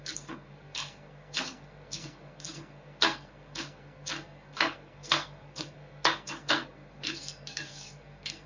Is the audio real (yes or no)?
no